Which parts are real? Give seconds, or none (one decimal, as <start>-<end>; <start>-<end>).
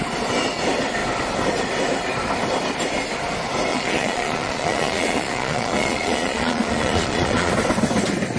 0.0-3.7; 7.5-8.4